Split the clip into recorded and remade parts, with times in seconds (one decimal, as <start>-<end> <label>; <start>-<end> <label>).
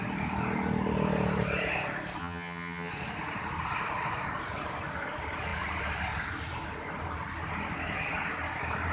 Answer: 0.0-2.2 recorded; 2.2-2.9 remade; 2.9-8.9 recorded